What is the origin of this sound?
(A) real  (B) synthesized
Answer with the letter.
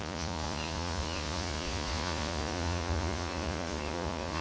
B